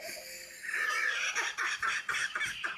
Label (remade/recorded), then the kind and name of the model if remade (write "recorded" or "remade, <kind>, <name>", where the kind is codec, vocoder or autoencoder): recorded